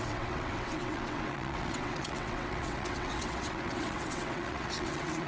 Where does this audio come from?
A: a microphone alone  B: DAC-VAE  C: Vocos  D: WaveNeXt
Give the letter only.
D